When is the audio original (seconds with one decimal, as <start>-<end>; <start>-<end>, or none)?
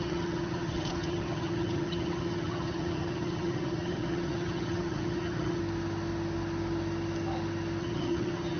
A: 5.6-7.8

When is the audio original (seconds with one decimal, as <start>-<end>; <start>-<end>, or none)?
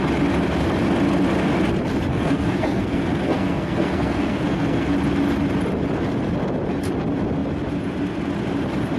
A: 0.0-2.1; 4.9-9.0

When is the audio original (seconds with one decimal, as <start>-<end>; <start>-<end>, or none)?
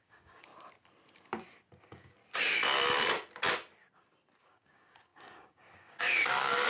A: 0.5-1.8; 2.2-4.4